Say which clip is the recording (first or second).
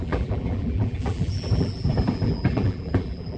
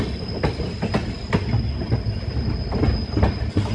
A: second